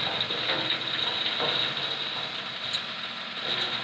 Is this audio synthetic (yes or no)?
no